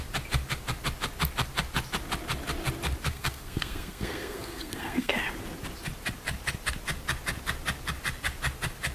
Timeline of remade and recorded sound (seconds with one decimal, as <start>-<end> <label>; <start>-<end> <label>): 0.0-3.1 recorded; 3.1-5.1 remade; 5.1-8.9 recorded